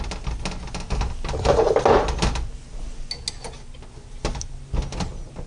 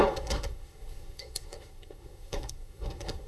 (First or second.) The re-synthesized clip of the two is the second